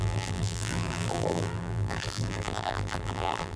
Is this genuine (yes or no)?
no